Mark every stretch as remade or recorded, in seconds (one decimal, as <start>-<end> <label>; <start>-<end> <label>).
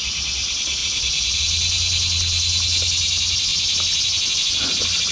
0.0-0.8 recorded; 0.8-1.4 remade; 1.4-5.1 recorded